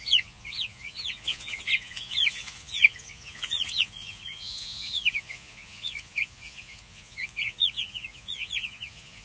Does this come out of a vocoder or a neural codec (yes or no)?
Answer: yes